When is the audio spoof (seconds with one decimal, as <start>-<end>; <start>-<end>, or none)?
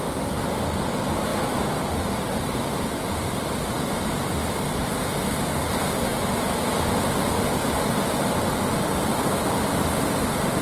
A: none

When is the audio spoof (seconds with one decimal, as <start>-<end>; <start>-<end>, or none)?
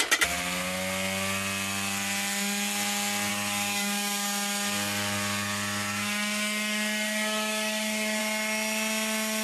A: 3.3-8.2